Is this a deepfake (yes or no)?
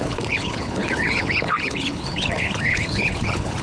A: yes